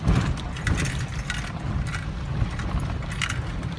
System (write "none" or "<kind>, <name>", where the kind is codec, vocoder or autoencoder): none